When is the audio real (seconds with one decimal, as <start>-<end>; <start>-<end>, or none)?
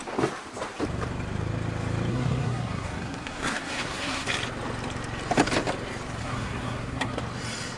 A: 0.0-2.1; 4.3-6.2; 7.2-7.8